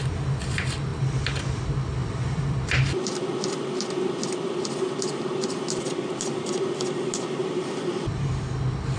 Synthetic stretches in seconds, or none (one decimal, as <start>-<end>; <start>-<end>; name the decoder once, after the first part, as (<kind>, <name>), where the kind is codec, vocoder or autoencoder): 0.9-4.5 (vocoder, BigVGAN v2); 7.4-8.3